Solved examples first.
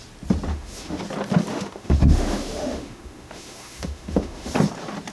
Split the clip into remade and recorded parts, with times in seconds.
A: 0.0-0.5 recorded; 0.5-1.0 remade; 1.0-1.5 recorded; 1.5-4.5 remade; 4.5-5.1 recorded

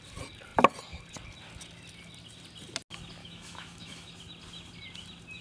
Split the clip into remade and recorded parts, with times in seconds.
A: 0.0-3.2 recorded; 3.2-4.1 remade; 4.1-5.4 recorded